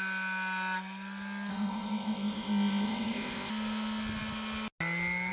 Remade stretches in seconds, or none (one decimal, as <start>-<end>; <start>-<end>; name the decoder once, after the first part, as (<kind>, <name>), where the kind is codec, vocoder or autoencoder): 1.5-3.5 (codec, ZipCodec)